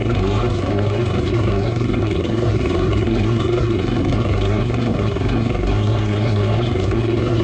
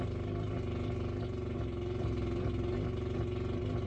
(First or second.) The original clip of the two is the second